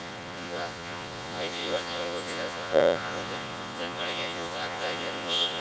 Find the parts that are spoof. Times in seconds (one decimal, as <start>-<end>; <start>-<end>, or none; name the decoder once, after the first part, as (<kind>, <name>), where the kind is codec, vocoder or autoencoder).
0.0-5.6 (vocoder, Vocos)